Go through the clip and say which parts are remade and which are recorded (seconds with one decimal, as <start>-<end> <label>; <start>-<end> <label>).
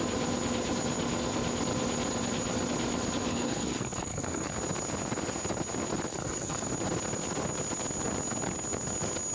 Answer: 0.0-3.3 recorded; 3.3-4.5 remade; 4.5-6.1 recorded; 6.1-6.7 remade; 6.7-9.3 recorded